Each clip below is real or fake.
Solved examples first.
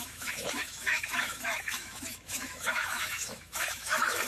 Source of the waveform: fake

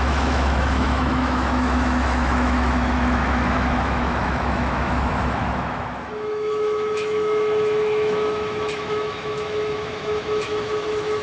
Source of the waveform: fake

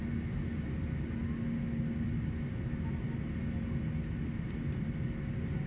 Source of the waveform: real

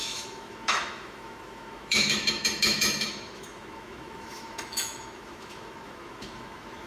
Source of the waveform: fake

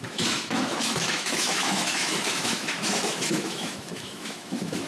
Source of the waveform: fake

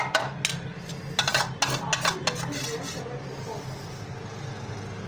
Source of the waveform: real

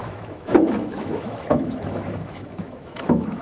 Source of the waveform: fake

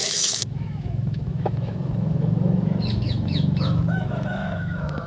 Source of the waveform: fake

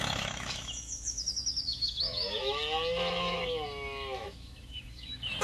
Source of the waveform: fake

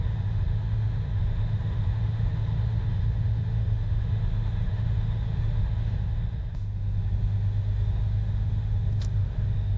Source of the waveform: fake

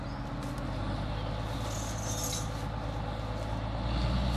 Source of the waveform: real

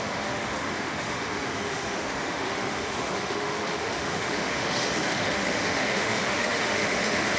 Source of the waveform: fake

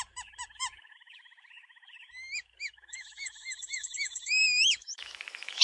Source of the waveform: fake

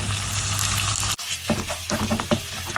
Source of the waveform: real